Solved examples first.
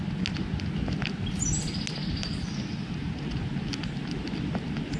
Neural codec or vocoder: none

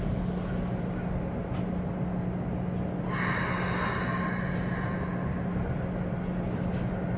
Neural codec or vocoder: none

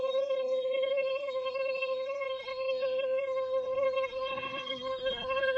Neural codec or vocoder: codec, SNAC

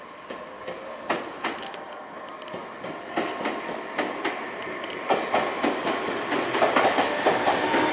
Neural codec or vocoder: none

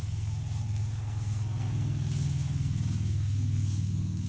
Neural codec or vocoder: codec, SNAC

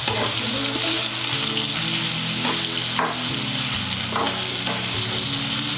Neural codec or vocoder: none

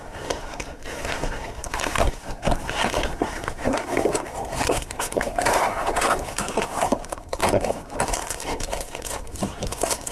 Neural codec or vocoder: codec, SNAC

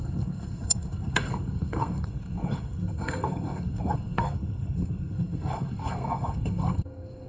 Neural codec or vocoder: codec, SNAC